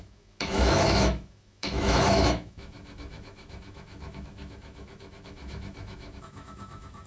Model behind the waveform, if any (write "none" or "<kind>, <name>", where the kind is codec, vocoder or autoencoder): autoencoder, DAC-VAE